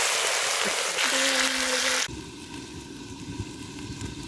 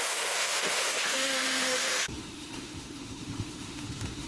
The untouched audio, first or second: first